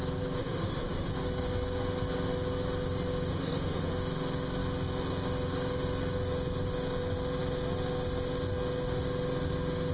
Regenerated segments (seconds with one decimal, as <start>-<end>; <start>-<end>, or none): 0.4-1.1; 3.3-3.9